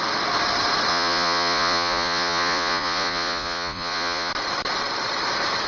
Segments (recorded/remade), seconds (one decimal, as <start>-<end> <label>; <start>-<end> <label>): 0.0-0.9 recorded; 0.9-4.3 remade; 4.3-5.7 recorded